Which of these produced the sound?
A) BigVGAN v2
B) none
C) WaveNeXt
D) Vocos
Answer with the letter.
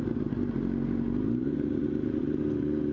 B